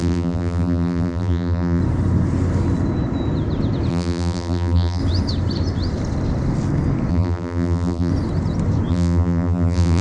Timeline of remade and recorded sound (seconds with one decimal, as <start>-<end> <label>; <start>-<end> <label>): 0.0-1.8 remade; 1.8-3.9 recorded; 3.9-5.0 remade; 5.0-7.1 recorded; 7.1-8.1 remade; 8.1-8.9 recorded; 8.9-10.0 remade